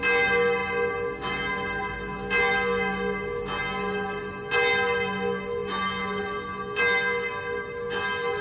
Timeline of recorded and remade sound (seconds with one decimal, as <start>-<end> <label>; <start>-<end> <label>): 0.0-8.4 recorded

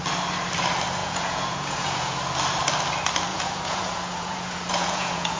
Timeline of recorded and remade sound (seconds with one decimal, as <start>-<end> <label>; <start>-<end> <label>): 0.0-1.0 recorded; 1.0-2.2 remade; 2.2-3.3 recorded; 3.3-5.4 remade

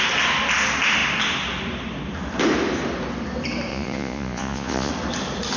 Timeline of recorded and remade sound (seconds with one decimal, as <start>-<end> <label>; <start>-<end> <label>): 0.0-3.7 recorded; 3.7-4.9 remade; 4.9-5.6 recorded

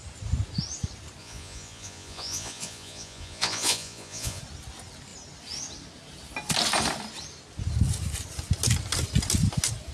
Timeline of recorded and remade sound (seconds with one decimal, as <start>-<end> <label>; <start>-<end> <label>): 0.0-1.2 recorded; 1.2-4.4 remade; 4.4-9.9 recorded

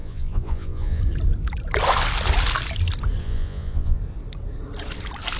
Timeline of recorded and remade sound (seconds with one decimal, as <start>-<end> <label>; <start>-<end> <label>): 0.0-1.0 remade; 1.0-3.2 recorded; 3.2-4.0 remade; 4.0-5.4 recorded

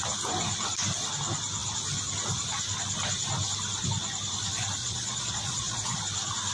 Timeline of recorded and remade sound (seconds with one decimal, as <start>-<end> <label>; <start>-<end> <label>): 0.0-4.8 recorded; 4.8-6.0 remade; 6.0-6.5 recorded

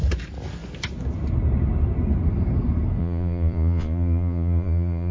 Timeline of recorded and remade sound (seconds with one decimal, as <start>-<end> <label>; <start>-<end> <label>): 0.0-3.0 recorded; 3.0-5.1 remade

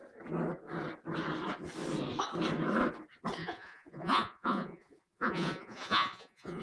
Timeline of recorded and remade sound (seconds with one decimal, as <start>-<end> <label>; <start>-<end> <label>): 0.0-3.4 recorded; 3.4-6.6 remade